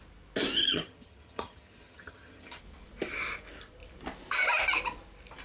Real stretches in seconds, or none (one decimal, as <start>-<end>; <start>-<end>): 0.0-0.6; 2.6-5.4